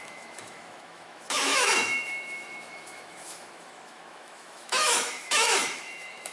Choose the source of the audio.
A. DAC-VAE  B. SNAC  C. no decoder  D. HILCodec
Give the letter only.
A